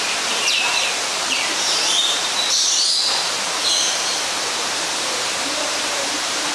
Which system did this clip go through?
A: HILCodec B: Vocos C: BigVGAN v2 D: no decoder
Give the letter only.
C